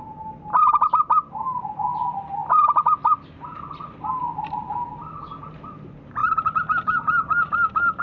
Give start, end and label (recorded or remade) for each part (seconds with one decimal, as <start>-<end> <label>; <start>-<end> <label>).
0.0-6.2 recorded; 6.2-8.0 remade